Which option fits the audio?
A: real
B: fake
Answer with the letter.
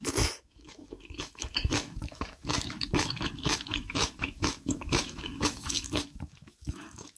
B